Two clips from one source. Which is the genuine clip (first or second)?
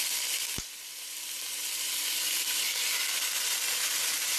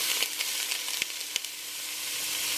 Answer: first